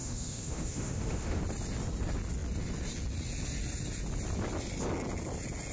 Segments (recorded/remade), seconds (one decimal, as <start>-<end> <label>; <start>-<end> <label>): 0.0-1.4 remade; 1.4-5.7 recorded